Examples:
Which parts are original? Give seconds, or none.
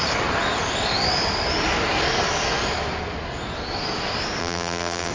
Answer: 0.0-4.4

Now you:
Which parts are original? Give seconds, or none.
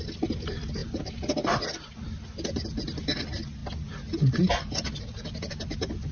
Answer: 0.0-6.1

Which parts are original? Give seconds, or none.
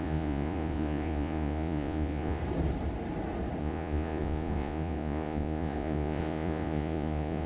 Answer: 2.4-3.6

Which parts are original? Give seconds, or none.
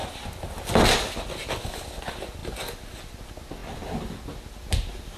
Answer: 0.0-5.2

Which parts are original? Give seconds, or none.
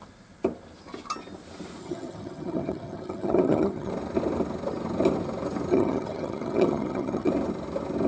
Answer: 0.0-1.8; 3.9-5.7; 7.3-8.1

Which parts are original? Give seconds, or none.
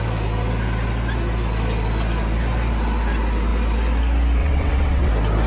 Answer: 0.0-4.4; 5.1-5.5